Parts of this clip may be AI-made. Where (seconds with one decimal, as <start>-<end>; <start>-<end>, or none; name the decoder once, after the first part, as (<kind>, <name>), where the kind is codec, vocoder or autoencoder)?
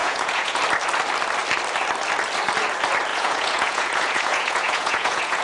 0.0-0.6 (vocoder, Vocos); 3.1-5.4